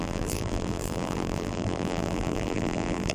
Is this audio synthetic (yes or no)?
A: yes